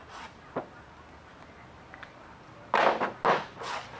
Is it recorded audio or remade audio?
recorded